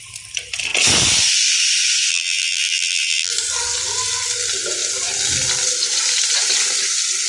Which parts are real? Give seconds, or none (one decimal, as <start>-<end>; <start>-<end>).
0.0-2.1; 3.3-7.3